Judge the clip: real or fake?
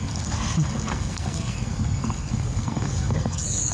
fake